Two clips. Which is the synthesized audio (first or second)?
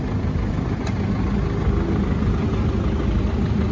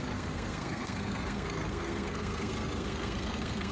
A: second